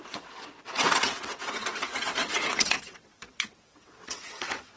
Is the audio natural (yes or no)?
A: no